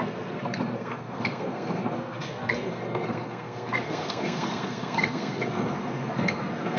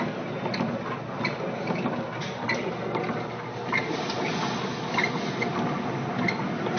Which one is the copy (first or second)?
first